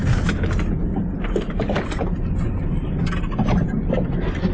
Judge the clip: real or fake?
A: real